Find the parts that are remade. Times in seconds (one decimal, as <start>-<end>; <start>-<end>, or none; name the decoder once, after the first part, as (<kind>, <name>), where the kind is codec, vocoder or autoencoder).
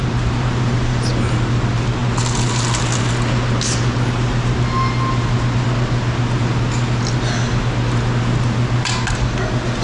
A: 0.0-1.1 (vocoder, BigVGAN v2)